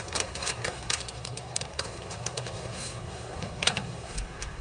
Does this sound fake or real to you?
fake